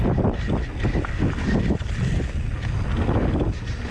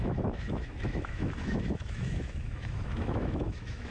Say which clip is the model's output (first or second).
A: second